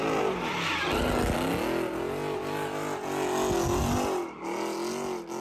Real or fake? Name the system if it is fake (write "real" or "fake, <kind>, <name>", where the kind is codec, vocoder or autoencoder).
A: real